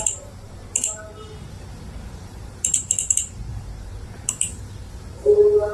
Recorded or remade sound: remade